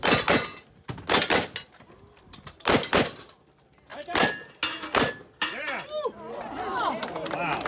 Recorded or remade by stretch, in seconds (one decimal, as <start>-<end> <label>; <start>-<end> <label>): 0.0-7.7 recorded